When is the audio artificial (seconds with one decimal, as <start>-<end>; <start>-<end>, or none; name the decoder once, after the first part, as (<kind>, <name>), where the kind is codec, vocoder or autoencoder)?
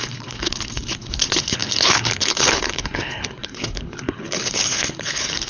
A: 0.0-5.5 (codec, HILCodec)